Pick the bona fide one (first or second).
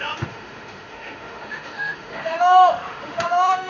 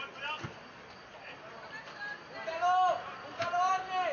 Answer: second